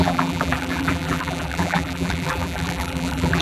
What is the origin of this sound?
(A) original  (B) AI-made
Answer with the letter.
B